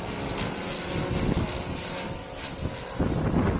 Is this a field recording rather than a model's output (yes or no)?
yes